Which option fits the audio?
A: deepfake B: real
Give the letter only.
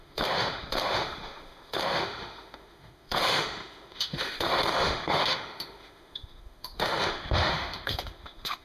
A